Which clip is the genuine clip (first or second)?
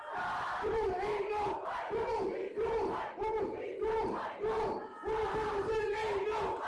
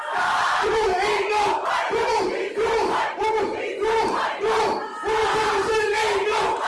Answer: first